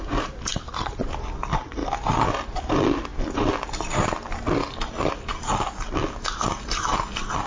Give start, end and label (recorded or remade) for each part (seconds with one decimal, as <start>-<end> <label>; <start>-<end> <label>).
0.0-7.5 recorded